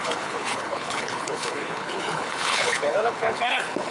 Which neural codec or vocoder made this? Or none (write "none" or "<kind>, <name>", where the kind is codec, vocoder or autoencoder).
codec, HILCodec